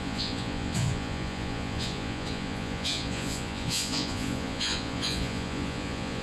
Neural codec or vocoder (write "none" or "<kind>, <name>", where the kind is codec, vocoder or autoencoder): vocoder, Vocos